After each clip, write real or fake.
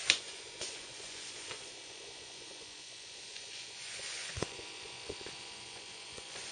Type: fake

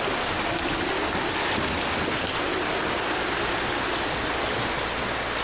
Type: real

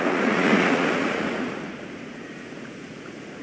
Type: fake